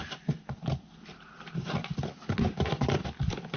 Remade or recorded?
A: recorded